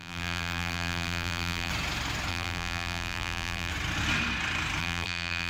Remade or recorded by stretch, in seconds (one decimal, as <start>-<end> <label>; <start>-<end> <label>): 0.0-1.7 remade; 1.7-2.3 recorded; 2.3-3.7 remade; 3.7-4.8 recorded; 4.8-5.5 remade